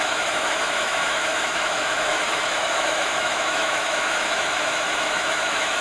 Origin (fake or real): fake